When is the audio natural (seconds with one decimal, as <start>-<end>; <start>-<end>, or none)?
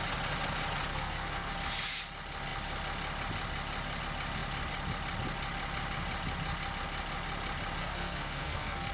0.0-0.9; 1.5-7.8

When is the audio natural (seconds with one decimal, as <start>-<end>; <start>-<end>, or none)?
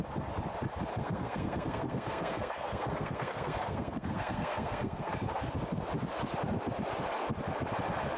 0.0-0.9; 5.1-8.2